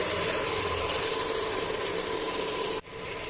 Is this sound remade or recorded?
recorded